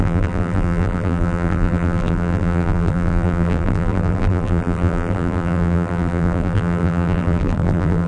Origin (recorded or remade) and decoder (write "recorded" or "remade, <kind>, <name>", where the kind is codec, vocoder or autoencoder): remade, vocoder, BigVGAN v2